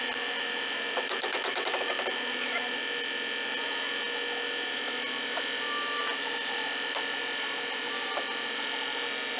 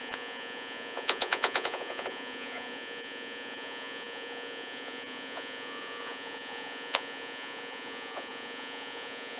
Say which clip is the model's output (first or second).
second